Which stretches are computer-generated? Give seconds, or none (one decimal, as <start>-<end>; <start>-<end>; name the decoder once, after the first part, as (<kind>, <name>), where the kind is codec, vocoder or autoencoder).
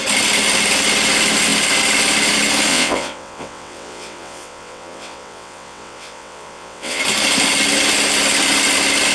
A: 2.7-7.0 (vocoder, WaveNeXt)